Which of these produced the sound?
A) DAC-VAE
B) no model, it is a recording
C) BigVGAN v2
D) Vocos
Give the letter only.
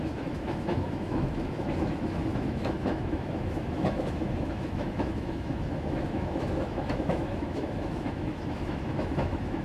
A